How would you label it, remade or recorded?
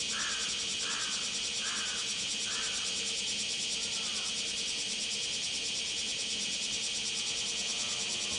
recorded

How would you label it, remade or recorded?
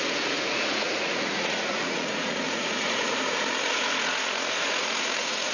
remade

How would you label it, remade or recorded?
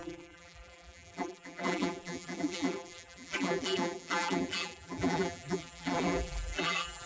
remade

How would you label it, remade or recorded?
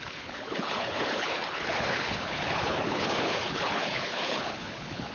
remade